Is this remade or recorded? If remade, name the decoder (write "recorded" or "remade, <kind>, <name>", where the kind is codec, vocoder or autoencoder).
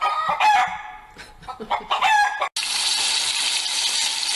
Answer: recorded